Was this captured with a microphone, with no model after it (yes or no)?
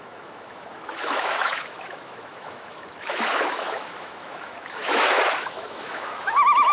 no